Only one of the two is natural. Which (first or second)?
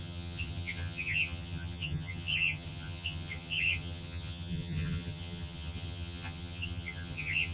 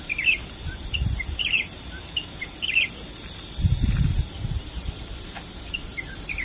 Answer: second